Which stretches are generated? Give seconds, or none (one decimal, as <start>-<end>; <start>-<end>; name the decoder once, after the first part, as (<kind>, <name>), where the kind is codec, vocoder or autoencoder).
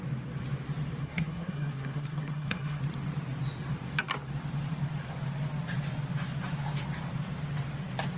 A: 1.0-2.8 (codec, SNAC)